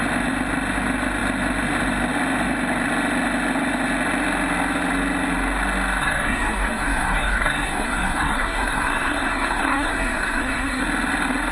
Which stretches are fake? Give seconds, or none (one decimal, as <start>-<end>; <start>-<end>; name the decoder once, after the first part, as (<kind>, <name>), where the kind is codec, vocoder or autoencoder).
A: 6.0-10.8 (codec, SNAC)